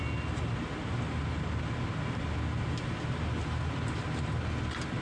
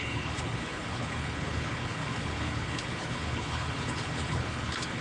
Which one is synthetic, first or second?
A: second